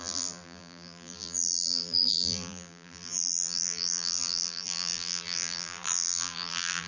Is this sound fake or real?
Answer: fake